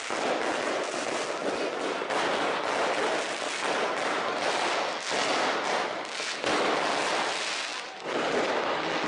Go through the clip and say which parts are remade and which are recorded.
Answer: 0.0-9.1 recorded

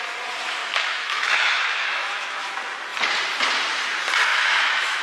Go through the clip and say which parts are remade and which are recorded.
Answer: 0.0-0.6 recorded; 0.6-2.5 remade; 2.5-4.3 recorded; 4.3-5.0 remade

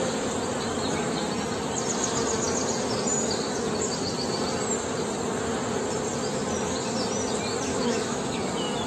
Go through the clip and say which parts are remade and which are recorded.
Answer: 0.0-7.7 recorded; 7.7-8.5 remade; 8.5-8.9 recorded

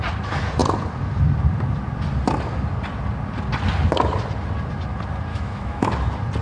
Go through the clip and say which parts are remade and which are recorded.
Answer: 0.0-5.3 recorded; 5.3-5.9 remade; 5.9-6.4 recorded

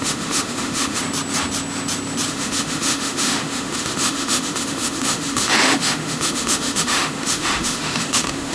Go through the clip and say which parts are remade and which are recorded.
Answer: 0.0-1.0 remade; 1.0-2.3 recorded; 2.3-8.5 remade